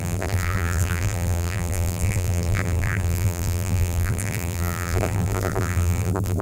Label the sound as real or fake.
fake